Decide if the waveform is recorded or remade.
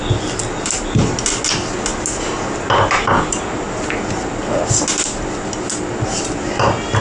recorded